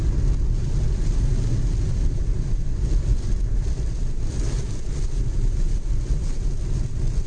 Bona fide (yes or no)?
yes